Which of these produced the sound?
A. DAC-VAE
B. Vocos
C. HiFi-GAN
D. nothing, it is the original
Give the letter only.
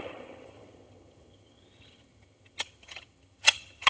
C